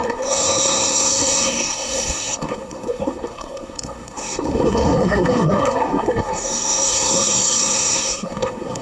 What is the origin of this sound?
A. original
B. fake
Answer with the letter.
B